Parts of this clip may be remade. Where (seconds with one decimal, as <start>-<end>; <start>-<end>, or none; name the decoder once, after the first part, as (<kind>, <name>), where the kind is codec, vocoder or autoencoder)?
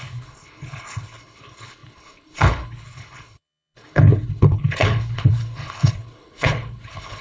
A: 0.0-7.2 (codec, HILCodec)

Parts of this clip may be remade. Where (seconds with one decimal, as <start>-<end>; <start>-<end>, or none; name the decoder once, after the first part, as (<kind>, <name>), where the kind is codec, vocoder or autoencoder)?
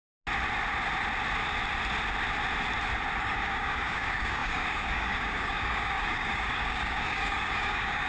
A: 3.2-8.1 (codec, DAC)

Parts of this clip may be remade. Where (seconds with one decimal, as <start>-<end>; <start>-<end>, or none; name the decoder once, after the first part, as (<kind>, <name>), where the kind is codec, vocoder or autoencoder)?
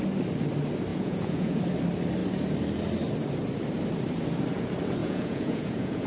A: 0.9-1.6 (vocoder, Vocos); 5.0-6.1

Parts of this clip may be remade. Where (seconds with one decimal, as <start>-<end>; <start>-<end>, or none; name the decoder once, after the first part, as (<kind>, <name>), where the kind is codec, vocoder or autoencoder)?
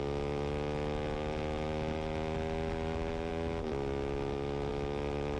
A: none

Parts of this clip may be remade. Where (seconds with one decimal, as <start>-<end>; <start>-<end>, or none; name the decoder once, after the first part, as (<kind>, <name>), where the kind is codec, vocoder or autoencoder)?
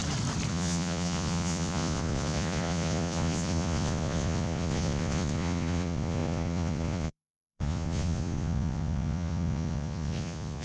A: 0.5-10.6 (vocoder, Vocos)